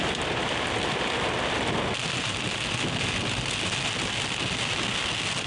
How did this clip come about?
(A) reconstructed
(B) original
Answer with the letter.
B